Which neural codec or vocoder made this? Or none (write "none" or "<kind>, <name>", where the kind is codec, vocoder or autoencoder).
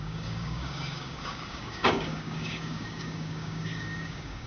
codec, DAC